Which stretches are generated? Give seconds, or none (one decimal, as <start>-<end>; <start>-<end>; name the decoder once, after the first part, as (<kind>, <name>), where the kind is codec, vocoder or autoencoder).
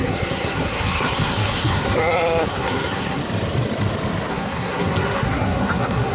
0.0-2.0 (codec, SNAC); 2.5-3.2; 4.3-6.1